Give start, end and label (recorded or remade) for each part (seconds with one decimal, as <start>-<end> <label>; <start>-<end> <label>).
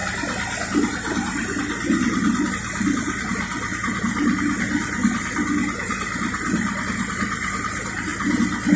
0.0-8.8 recorded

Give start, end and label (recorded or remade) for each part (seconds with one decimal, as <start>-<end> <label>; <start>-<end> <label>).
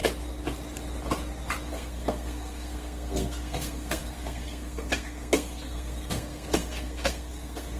0.0-1.7 recorded; 1.7-7.8 remade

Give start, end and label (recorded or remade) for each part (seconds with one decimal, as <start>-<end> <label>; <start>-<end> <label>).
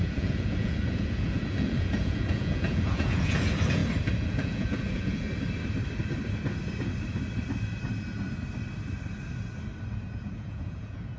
0.0-3.8 remade; 3.8-4.3 recorded; 4.3-5.3 remade; 5.3-9.9 recorded; 9.9-11.2 remade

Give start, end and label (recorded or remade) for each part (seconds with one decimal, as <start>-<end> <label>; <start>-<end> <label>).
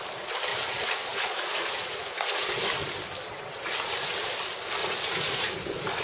0.0-0.5 recorded; 0.5-2.5 remade; 2.5-4.8 recorded; 4.8-5.5 remade; 5.5-6.0 recorded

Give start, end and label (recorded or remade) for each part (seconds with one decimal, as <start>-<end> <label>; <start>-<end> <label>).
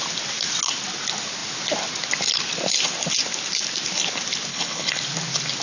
0.0-4.5 recorded; 4.5-5.0 remade; 5.0-5.6 recorded